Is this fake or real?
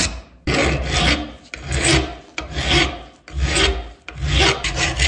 real